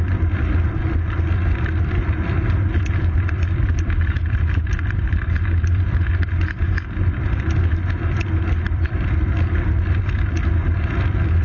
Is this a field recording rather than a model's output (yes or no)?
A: no